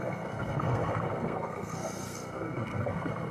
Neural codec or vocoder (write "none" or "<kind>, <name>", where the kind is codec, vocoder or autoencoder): codec, SNAC